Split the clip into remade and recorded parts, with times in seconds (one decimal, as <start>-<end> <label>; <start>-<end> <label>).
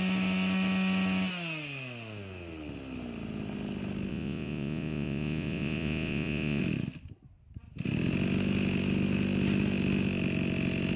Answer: 0.0-4.1 recorded; 4.1-6.6 remade; 6.6-11.0 recorded